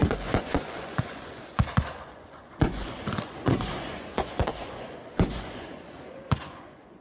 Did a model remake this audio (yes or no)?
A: yes